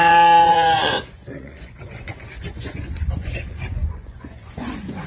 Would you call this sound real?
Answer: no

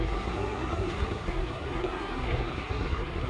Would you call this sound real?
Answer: no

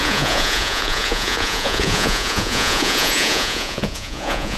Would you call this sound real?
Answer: no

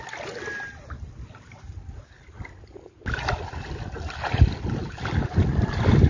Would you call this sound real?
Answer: yes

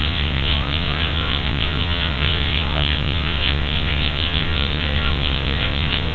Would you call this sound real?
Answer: no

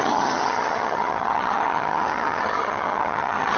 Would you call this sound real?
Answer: no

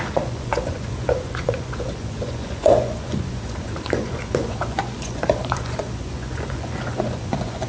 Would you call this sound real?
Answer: no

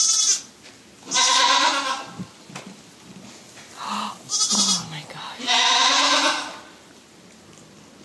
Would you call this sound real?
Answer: yes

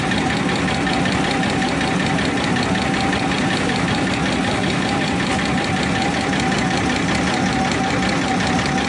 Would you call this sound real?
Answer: yes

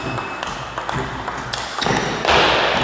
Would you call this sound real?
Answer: yes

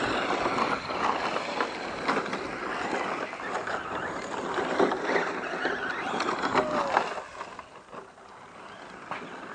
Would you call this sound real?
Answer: yes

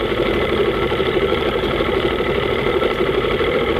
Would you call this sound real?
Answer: no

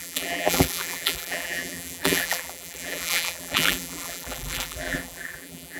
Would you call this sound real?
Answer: no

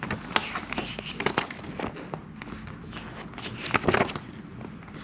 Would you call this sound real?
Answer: yes